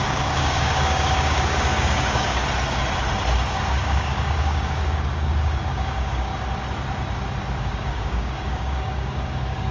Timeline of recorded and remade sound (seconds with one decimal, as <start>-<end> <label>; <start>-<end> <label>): 0.0-2.4 remade; 2.4-3.5 recorded; 3.5-6.3 remade; 6.3-7.6 recorded; 7.6-9.7 remade